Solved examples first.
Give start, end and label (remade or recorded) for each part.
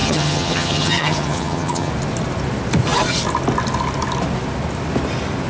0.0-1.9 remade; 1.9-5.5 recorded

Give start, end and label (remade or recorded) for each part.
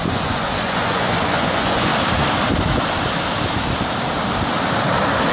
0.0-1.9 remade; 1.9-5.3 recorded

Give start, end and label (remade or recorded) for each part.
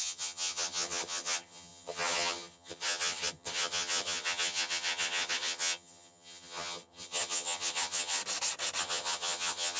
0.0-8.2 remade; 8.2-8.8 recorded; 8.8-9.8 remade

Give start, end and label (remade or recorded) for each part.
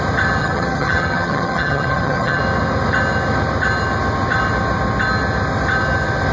0.0-0.4 recorded; 0.4-2.4 remade; 2.4-6.3 recorded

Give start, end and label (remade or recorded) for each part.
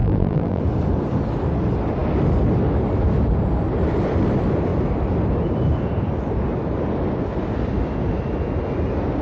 0.0-0.6 remade; 0.6-9.2 recorded